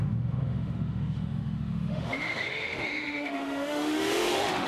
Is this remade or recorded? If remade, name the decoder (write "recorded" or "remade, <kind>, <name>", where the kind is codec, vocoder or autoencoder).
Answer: remade, autoencoder, DAC-VAE